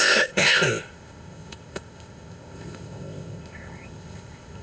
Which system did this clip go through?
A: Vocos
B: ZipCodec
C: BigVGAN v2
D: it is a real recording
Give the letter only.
B